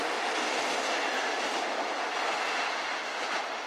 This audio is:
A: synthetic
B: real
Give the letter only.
B